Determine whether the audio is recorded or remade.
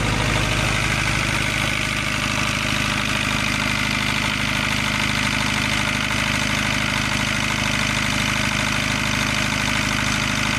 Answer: recorded